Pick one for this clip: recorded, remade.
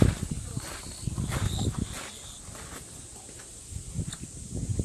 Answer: recorded